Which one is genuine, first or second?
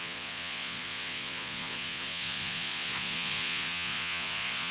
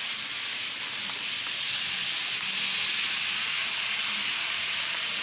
second